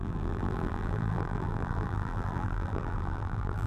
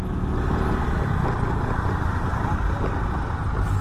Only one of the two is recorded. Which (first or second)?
second